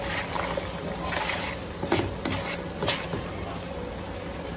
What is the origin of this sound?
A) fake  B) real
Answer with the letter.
B